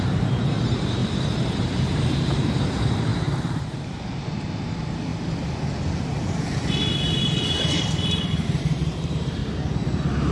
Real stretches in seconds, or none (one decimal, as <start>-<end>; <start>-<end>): 5.1-7.2; 9.4-10.3